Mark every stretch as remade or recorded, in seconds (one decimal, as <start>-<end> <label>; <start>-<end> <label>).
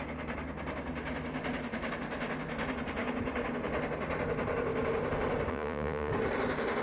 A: 0.0-5.5 recorded; 5.5-6.1 remade; 6.1-6.8 recorded